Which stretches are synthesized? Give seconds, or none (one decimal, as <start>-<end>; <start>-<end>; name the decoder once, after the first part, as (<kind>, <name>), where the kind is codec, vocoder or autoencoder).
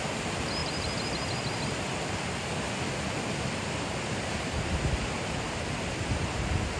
none